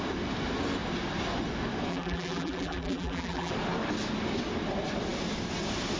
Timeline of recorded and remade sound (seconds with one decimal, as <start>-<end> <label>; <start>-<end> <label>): 0.0-1.9 recorded; 1.9-3.5 remade; 3.5-6.0 recorded